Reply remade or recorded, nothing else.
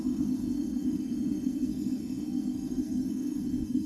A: remade